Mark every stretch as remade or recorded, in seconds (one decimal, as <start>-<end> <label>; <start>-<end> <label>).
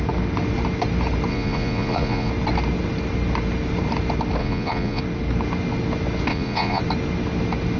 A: 0.0-1.3 recorded; 1.3-2.3 remade; 2.3-4.4 recorded; 4.4-5.0 remade; 5.0-6.3 recorded; 6.3-6.8 remade; 6.8-7.8 recorded